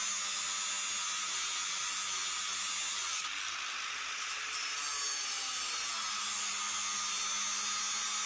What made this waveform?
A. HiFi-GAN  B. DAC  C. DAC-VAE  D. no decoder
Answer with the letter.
D